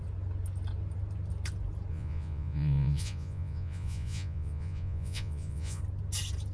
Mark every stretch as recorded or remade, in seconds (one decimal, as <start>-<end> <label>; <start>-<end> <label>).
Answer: 0.0-1.9 recorded; 1.9-5.8 remade; 5.8-6.5 recorded